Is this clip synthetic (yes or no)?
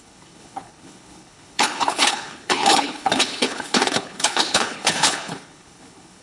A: yes